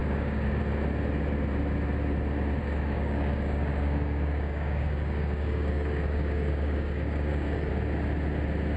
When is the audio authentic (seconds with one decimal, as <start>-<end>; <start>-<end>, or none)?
0.6-2.6; 7.7-8.8